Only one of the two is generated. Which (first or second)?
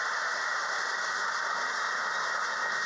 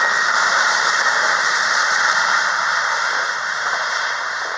second